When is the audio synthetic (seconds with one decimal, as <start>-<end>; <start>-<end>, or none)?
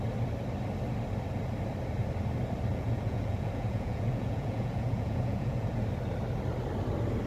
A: 2.7-5.8